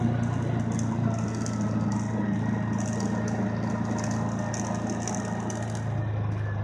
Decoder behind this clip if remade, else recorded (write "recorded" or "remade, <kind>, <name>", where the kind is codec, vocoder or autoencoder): recorded